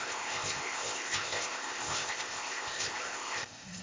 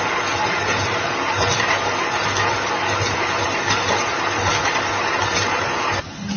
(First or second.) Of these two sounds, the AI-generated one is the first